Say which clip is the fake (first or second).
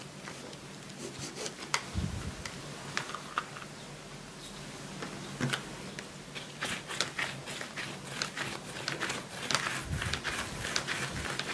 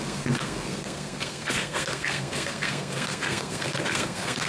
second